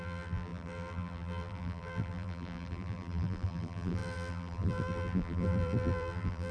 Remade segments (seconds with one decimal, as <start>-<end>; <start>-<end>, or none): 0.0-6.5